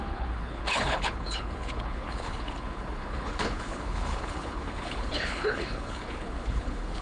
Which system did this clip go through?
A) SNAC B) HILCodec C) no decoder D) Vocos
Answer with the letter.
B